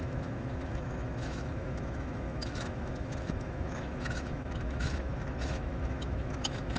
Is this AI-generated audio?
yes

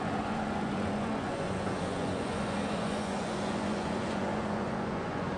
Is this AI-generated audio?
yes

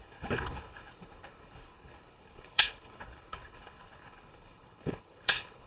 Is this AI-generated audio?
yes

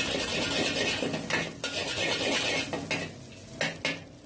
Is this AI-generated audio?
no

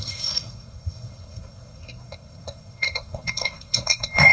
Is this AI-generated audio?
yes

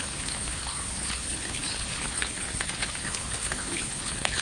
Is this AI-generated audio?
yes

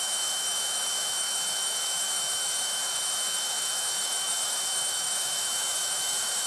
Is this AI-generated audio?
yes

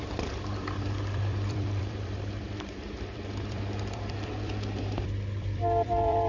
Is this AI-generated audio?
yes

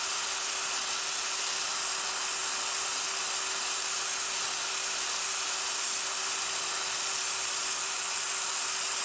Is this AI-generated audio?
no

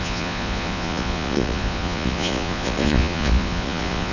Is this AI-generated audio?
yes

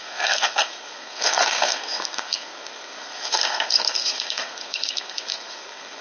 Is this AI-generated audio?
yes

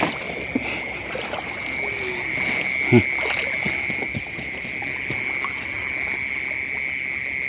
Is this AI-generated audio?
no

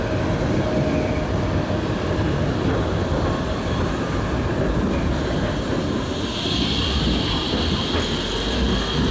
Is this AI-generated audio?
no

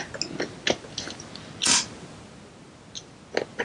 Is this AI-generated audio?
no